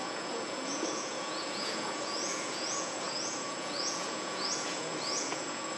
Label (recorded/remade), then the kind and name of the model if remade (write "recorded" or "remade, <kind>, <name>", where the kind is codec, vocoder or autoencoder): remade, vocoder, Vocos